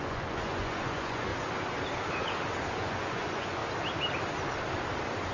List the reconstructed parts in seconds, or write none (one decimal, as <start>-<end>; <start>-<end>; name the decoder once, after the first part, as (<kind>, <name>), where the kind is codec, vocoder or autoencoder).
0.0-1.3 (vocoder, Vocos); 2.7-3.6

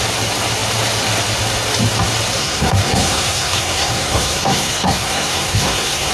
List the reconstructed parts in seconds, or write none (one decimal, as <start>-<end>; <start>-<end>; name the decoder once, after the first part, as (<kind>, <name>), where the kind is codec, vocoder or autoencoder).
2.4-6.1 (codec, SNAC)

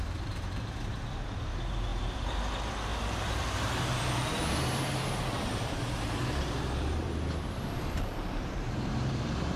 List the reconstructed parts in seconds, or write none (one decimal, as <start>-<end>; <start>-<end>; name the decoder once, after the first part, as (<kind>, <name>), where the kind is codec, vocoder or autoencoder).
0.0-9.6 (vocoder, BigVGAN v2)

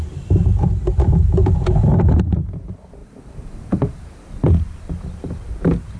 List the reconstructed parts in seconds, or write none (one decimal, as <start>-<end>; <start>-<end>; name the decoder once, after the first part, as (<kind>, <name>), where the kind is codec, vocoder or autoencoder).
3.0-6.0 (vocoder, BigVGAN v2)